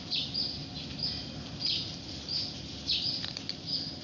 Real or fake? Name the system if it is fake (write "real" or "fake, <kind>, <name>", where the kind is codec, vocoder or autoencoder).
real